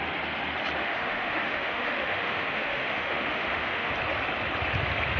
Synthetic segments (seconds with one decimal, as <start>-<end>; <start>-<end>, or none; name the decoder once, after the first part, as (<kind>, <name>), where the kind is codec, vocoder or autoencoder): 0.8-3.9 (autoencoder, DAC-VAE)